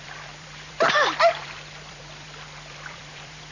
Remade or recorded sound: remade